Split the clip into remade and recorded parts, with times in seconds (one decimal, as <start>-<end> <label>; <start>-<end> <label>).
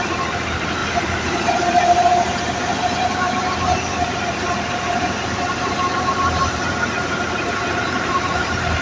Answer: 0.0-8.8 remade